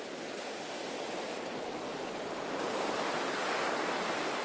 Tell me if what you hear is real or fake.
real